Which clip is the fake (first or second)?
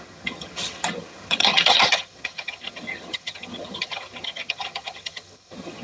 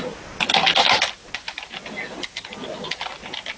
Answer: first